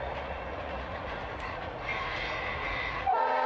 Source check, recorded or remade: remade